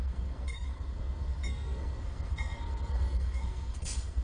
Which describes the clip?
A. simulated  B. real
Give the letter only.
A